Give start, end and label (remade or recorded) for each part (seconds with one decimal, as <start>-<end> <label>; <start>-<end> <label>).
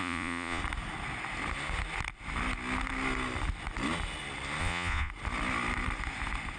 0.0-0.6 remade; 0.6-4.6 recorded; 4.6-5.1 remade; 5.1-6.6 recorded